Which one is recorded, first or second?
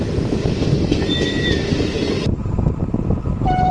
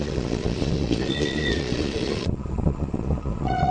first